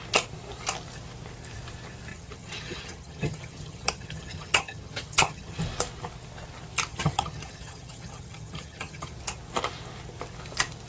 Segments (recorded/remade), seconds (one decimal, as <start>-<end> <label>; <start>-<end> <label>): 0.0-2.1 recorded; 2.1-5.6 remade; 5.6-6.9 recorded; 6.9-9.1 remade; 9.1-10.9 recorded